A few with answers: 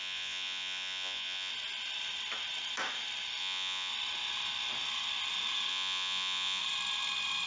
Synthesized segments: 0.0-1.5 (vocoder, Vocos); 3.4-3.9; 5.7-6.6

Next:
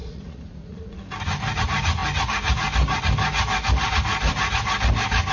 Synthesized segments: 0.0-1.0 (vocoder, Vocos)

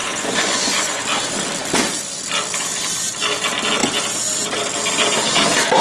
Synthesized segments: 0.0-1.0 (vocoder, Vocos)

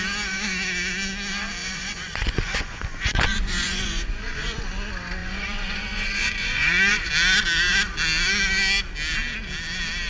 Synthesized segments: 1.6-4.6 (vocoder, Vocos); 5.2-7.1

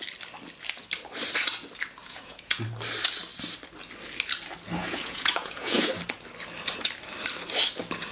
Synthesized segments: 2.0-2.6 (vocoder, Vocos); 4.8-5.9

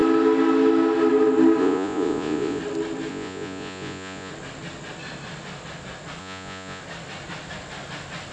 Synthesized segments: 1.6-2.6 (vocoder, Vocos); 3.1-4.3; 6.2-6.8

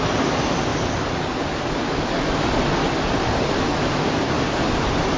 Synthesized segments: none

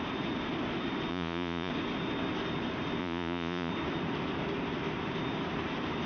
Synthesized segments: 1.1-1.7 (vocoder, Vocos); 3.0-3.7